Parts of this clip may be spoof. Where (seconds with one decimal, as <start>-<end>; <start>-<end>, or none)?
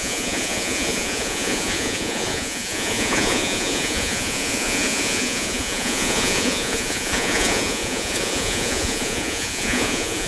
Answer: 0.0-10.3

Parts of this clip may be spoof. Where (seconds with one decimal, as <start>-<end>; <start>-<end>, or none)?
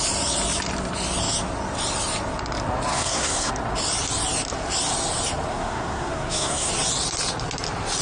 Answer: 2.9-3.5; 5.5-6.7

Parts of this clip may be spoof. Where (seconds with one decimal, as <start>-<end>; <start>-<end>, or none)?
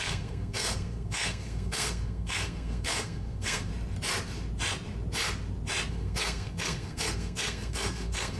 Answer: 0.0-3.7; 5.9-8.4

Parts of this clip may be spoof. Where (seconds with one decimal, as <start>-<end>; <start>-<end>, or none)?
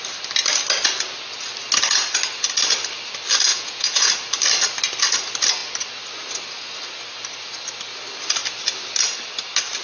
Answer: 3.5-4.1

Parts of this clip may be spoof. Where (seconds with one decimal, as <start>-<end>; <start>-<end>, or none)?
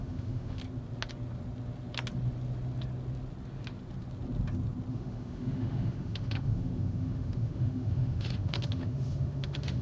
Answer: 0.0-0.6; 4.9-9.8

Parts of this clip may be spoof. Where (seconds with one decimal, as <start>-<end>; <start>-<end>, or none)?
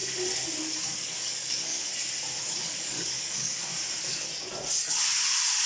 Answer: 0.6-1.9; 2.4-3.7